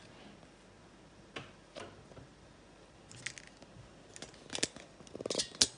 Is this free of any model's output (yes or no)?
yes